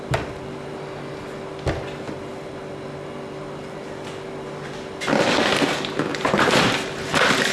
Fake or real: real